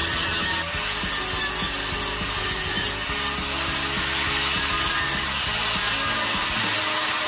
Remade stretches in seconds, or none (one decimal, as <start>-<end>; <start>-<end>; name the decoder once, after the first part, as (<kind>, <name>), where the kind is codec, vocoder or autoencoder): none